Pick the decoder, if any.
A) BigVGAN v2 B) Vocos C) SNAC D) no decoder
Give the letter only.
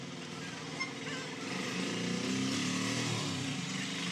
D